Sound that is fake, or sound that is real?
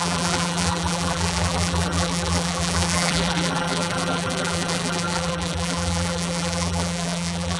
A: fake